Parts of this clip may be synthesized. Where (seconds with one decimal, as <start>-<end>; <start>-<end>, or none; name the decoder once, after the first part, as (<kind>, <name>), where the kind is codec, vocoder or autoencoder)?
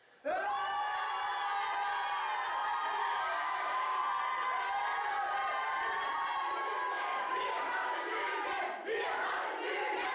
3.0-4.0 (codec, DAC); 6.9-8.3